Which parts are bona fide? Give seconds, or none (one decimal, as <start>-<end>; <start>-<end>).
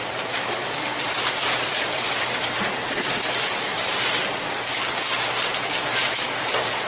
4.1-5.9